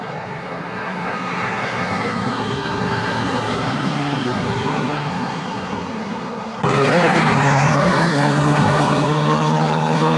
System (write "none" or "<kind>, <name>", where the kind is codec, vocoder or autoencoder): codec, SNAC